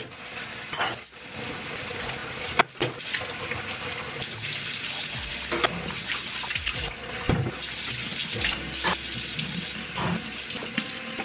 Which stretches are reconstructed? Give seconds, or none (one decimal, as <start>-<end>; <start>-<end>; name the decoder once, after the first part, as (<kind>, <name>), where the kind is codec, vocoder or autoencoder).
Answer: none

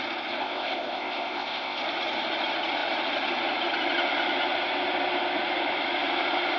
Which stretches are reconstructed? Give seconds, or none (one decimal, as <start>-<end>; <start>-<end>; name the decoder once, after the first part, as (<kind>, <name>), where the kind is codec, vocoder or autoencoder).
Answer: 0.4-1.8 (codec, ZipCodec)

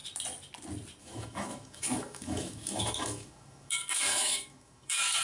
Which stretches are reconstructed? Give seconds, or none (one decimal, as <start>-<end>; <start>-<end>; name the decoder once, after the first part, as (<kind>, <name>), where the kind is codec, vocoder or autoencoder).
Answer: 1.0-5.2 (autoencoder, DAC-VAE)

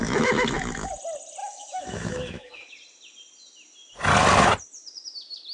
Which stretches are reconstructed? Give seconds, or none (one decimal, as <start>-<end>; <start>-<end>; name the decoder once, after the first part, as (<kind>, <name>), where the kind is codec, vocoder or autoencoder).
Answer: 0.0-0.9 (autoencoder, DAC-VAE); 1.4-2.7